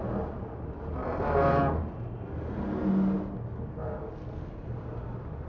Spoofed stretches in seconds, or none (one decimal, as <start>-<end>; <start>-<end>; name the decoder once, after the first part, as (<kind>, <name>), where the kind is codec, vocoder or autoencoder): none